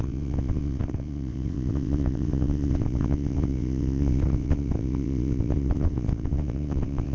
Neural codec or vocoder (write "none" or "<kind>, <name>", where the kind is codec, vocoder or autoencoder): vocoder, WaveNeXt